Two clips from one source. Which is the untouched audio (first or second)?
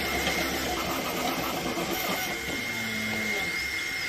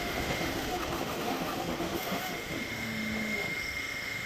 first